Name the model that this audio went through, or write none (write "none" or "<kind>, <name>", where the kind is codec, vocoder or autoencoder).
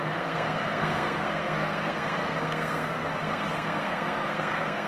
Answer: codec, SNAC